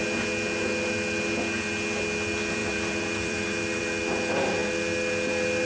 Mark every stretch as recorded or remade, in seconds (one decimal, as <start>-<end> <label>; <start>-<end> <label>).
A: 0.0-2.6 recorded; 2.6-3.8 remade; 3.8-5.7 recorded